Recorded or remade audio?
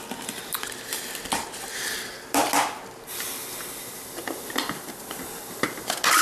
recorded